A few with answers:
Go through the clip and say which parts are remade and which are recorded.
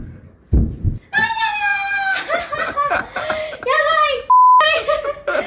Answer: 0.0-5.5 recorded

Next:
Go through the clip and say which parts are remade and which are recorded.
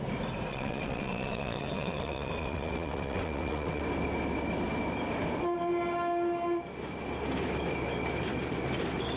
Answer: 0.0-0.5 recorded; 0.5-3.8 remade; 3.8-9.2 recorded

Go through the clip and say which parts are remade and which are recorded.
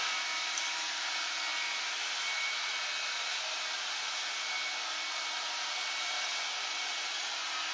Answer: 0.0-7.7 recorded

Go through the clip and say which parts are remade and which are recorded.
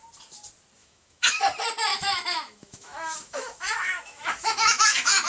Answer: 0.0-0.8 recorded; 0.8-1.4 remade; 1.4-1.9 recorded; 1.9-5.3 remade